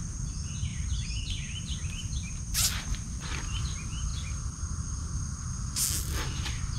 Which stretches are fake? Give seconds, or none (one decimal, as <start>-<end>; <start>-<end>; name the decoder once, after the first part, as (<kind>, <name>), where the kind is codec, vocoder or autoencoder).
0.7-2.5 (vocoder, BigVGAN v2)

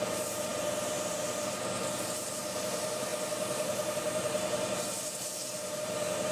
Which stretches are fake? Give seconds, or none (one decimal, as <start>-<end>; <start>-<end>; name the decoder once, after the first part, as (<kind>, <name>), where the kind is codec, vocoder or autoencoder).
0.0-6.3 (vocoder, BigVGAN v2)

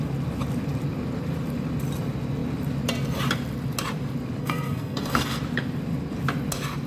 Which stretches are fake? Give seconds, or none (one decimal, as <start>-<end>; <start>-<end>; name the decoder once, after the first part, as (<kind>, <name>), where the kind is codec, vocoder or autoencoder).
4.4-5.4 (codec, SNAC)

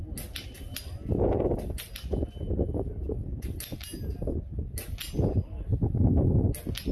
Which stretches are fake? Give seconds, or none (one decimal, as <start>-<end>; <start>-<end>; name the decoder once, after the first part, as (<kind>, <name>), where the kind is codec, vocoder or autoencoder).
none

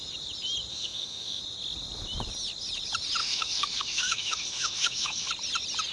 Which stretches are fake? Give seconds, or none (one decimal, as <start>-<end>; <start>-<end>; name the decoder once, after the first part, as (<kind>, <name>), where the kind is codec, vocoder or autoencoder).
0.7-1.4 (autoencoder, DAC-VAE); 3.2-5.3

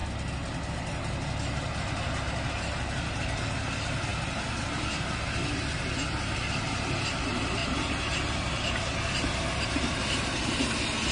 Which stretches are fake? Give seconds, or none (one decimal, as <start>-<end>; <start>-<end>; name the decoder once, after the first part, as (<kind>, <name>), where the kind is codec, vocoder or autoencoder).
none

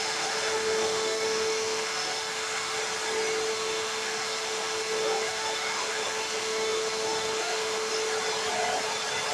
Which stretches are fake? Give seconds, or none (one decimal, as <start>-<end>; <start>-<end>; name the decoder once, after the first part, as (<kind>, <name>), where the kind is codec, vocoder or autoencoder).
0.0-2.8 (autoencoder, DAC-VAE); 3.5-7.9

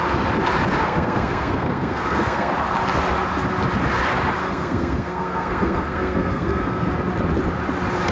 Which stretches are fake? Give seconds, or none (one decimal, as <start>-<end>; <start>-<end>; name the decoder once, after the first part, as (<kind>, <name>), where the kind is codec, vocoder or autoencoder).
0.8-2.5 (codec, SNAC); 4.4-6.9